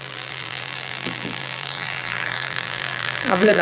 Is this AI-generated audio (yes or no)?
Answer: yes